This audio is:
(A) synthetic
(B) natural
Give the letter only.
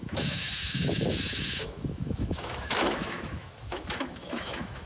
A